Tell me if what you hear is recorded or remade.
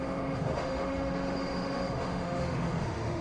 remade